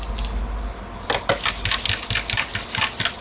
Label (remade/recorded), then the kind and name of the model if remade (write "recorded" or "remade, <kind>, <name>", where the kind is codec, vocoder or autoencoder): recorded